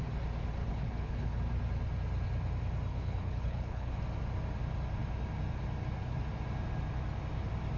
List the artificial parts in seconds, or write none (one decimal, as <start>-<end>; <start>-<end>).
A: 0.6-1.4; 2.9-4.0